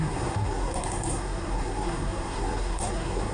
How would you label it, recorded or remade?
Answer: remade